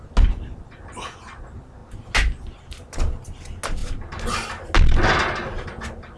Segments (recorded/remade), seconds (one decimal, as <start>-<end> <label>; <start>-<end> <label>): 0.0-6.2 recorded